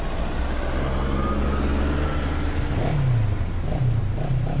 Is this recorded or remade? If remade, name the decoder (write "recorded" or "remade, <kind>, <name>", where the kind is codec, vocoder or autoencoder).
recorded